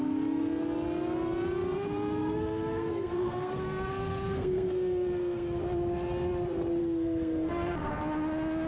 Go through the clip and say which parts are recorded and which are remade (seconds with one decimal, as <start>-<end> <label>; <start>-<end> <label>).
0.0-2.2 recorded; 2.2-5.6 remade; 5.6-6.8 recorded; 6.8-7.9 remade; 7.9-8.7 recorded